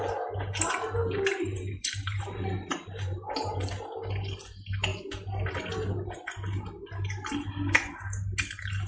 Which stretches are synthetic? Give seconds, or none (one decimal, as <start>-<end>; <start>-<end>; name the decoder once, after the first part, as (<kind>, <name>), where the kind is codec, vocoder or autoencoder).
1.0-3.7 (vocoder, BigVGAN v2)